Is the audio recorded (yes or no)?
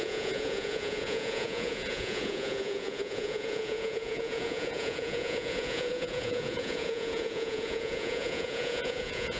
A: no